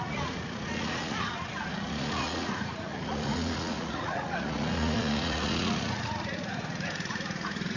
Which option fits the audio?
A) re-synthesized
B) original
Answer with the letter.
A